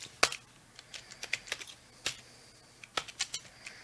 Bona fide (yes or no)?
yes